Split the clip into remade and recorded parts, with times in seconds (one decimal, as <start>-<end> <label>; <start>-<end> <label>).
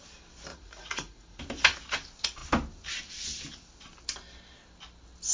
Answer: 0.0-0.5 recorded; 0.5-1.4 remade; 1.4-5.3 recorded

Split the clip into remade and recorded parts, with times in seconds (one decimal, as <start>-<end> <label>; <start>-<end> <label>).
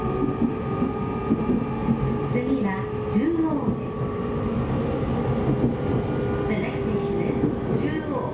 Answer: 0.0-8.3 recorded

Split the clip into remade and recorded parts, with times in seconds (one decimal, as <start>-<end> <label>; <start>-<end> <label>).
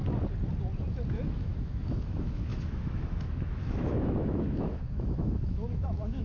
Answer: 0.0-1.3 recorded; 1.3-6.2 remade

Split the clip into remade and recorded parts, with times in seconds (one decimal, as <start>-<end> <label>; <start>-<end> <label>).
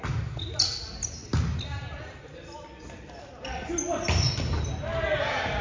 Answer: 0.0-5.6 recorded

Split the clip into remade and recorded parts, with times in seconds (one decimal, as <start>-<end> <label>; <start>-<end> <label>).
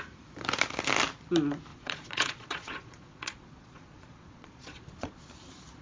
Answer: 0.0-1.7 recorded; 1.7-5.2 remade; 5.2-5.8 recorded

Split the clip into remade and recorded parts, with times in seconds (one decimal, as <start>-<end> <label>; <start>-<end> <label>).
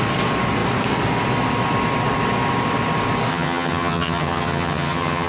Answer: 0.0-3.3 recorded; 3.3-5.3 remade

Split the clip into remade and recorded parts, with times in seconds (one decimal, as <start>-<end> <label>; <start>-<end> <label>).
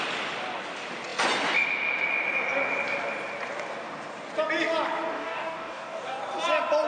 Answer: 0.0-5.1 recorded; 5.1-6.2 remade; 6.2-6.9 recorded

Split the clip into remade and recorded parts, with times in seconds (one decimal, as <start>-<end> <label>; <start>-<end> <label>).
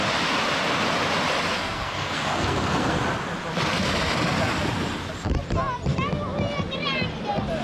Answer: 0.0-1.5 recorded; 1.5-3.0 remade; 3.0-7.6 recorded